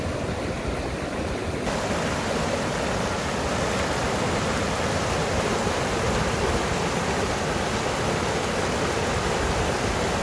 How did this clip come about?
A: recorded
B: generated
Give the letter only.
A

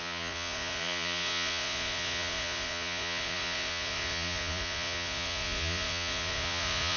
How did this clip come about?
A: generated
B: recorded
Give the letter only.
A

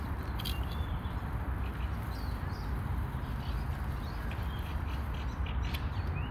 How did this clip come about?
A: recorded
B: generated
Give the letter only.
A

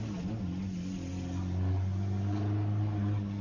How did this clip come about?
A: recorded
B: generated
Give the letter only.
A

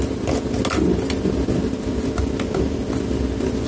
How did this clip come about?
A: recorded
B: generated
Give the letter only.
A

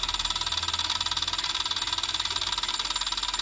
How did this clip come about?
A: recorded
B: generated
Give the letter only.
A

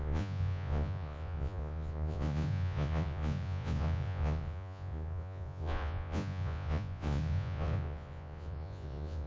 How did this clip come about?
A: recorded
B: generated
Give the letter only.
B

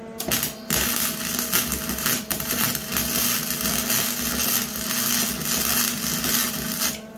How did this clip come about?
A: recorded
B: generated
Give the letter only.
A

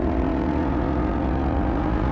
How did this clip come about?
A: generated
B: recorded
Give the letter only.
A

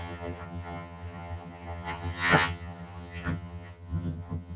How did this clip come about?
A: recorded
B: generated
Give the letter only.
B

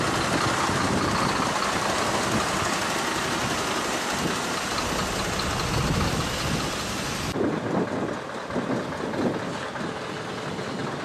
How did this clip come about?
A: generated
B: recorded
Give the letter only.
B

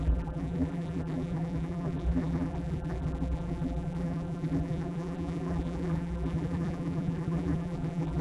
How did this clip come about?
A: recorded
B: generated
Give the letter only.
B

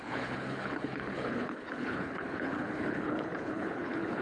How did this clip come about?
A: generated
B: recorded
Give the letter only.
A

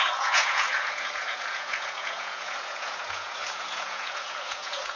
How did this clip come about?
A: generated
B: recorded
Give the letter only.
A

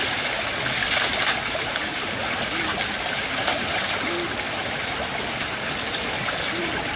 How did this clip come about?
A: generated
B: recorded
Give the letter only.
B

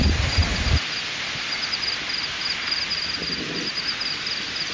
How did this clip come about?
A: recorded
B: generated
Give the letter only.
A